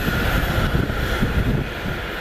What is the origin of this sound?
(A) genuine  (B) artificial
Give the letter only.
A